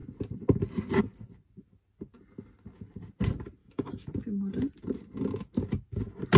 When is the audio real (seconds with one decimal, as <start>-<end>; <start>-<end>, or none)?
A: 0.0-3.6; 4.1-6.4